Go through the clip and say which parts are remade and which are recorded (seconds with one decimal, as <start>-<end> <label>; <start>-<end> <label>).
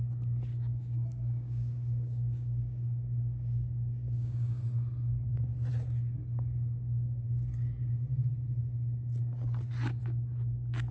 0.0-0.5 recorded; 0.5-4.6 remade; 4.6-10.9 recorded